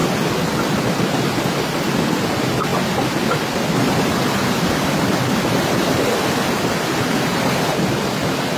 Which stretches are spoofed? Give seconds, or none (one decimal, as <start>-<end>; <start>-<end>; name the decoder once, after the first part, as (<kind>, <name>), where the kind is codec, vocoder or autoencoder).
none